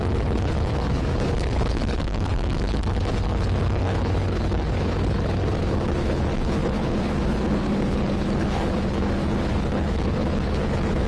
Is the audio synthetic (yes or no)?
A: yes